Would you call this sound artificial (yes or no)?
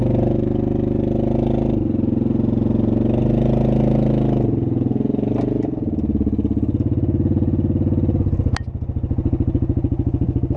no